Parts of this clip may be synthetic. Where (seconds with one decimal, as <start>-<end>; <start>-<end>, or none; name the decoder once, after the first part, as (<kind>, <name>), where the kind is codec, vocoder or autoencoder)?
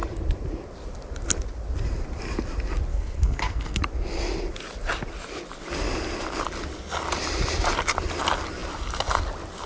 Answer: 2.9-3.8 (codec, SNAC)